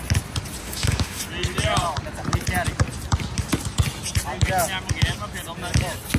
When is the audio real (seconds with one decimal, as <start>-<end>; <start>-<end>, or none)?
0.0-0.6; 1.2-6.2